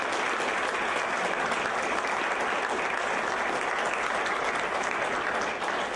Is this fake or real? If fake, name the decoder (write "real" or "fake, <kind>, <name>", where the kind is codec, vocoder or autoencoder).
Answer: real